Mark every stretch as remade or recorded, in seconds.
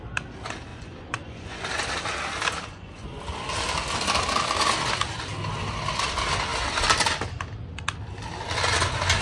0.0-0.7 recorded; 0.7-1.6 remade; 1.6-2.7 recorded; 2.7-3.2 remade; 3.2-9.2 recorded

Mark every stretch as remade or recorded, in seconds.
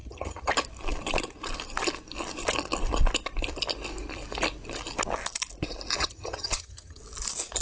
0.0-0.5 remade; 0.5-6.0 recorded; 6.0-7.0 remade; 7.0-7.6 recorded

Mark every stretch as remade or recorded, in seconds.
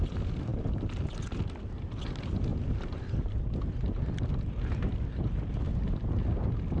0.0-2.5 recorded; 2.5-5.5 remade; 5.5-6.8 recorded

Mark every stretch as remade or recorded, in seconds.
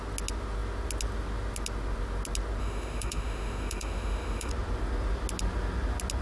0.0-2.6 recorded; 2.6-4.5 remade; 4.5-6.2 recorded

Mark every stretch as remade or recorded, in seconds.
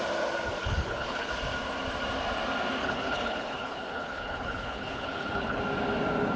0.0-0.6 recorded; 0.6-1.3 remade; 1.3-2.8 recorded; 2.8-5.6 remade; 5.6-6.4 recorded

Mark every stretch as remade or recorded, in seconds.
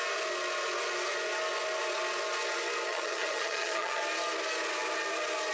0.0-2.9 recorded; 2.9-4.0 remade; 4.0-5.5 recorded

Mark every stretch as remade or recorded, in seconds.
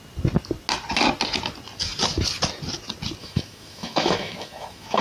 0.0-3.2 recorded; 3.2-5.0 remade